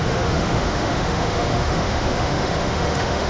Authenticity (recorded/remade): remade